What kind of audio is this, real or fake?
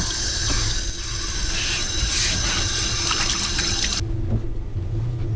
real